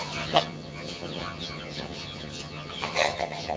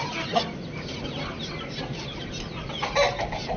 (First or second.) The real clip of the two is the second